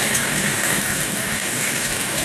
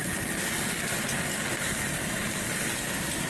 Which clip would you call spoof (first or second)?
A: first